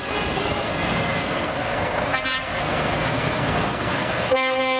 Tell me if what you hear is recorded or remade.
remade